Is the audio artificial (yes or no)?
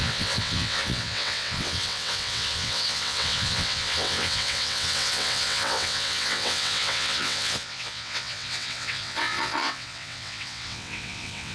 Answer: yes